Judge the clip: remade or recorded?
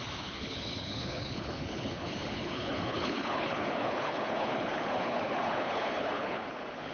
remade